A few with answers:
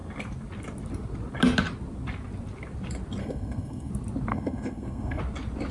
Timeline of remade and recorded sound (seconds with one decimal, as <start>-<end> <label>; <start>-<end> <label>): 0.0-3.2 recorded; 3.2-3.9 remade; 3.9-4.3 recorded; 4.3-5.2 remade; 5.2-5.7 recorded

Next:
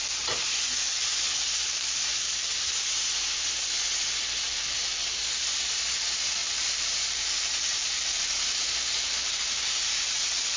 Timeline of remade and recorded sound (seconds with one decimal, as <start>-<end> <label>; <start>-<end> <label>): 0.0-1.6 recorded; 1.6-2.6 remade; 2.6-4.8 recorded; 4.8-5.7 remade; 5.7-6.4 recorded; 6.4-10.6 remade

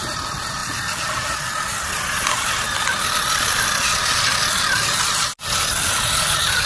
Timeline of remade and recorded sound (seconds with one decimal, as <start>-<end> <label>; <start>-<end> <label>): 0.0-6.7 recorded

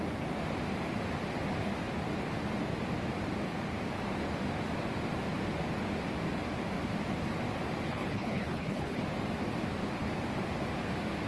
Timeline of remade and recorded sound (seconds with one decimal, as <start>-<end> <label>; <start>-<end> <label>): 0.0-7.9 recorded; 7.9-9.0 remade; 9.0-11.3 recorded

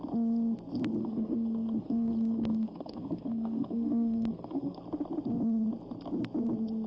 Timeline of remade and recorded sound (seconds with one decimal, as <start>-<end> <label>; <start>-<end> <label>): 0.0-1.0 recorded; 1.0-4.8 remade; 4.8-6.9 recorded